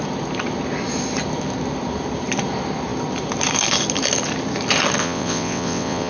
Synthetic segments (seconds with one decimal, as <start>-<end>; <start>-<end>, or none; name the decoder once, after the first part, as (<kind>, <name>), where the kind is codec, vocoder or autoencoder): 5.0-6.1 (vocoder, WaveNeXt)